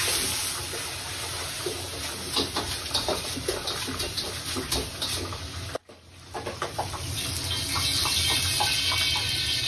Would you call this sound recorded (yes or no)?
yes